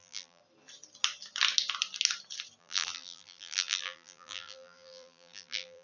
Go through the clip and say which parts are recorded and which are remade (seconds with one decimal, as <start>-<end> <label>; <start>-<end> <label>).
0.0-0.4 remade; 0.4-2.6 recorded; 2.6-5.8 remade